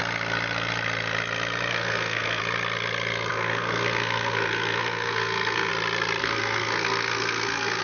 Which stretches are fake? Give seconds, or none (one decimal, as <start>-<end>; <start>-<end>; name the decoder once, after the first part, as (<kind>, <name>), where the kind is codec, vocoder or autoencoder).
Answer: 1.7-2.4 (codec, SNAC); 3.3-5.7; 6.2-7.8